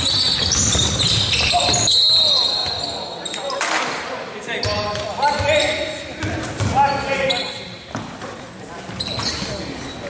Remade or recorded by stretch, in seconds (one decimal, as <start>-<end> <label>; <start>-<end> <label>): 0.0-10.1 recorded